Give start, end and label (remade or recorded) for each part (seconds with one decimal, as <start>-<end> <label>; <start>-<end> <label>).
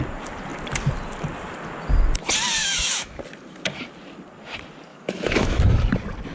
0.0-2.6 recorded; 2.6-3.2 remade; 3.2-4.9 recorded; 4.9-5.6 remade; 5.6-6.3 recorded